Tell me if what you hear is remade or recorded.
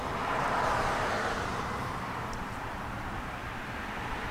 remade